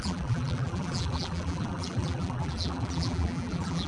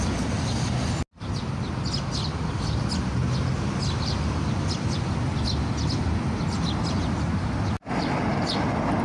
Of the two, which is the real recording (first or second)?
second